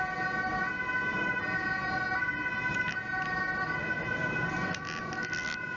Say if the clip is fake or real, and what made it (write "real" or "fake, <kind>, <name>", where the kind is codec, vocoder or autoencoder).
real